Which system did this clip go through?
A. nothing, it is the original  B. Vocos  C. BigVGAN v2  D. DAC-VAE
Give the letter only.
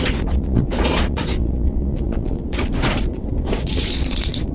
B